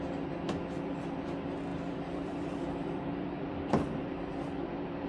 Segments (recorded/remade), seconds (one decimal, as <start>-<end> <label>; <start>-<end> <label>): 0.0-1.7 recorded; 1.7-5.1 remade